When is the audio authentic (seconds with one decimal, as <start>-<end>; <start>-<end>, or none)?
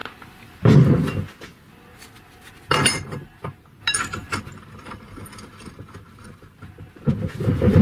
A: 0.0-7.8